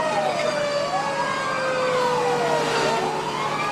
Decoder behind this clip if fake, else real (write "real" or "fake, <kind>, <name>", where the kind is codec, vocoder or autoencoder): real